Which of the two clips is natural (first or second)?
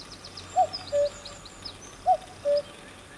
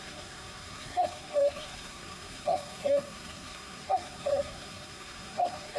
first